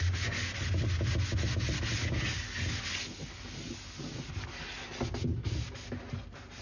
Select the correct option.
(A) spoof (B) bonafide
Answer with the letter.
B